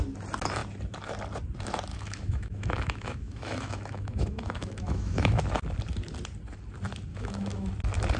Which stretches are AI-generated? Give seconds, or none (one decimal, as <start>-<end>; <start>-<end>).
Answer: 1.9-5.4; 7.1-7.7